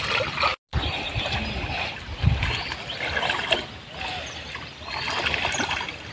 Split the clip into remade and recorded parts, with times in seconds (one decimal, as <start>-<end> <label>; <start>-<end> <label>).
0.0-6.1 recorded